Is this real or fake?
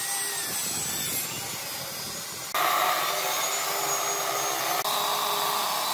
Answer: real